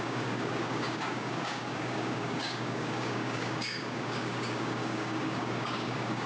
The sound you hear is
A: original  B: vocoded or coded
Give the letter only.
B